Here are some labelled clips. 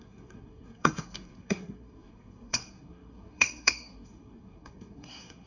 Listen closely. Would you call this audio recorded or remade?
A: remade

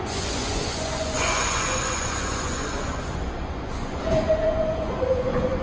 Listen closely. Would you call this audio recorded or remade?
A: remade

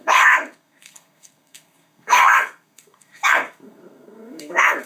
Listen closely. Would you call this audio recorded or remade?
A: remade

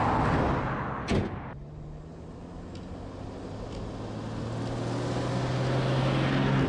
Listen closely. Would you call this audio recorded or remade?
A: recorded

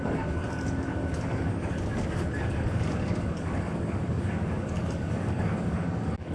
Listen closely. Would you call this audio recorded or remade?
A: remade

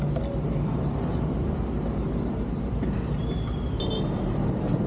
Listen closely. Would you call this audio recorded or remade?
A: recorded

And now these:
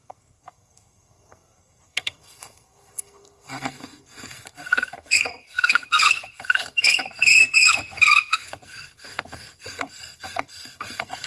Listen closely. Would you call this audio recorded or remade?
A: remade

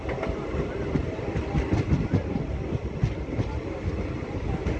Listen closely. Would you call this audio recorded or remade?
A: recorded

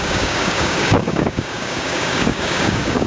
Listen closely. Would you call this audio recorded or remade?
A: remade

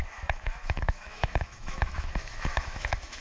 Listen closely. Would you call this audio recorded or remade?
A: remade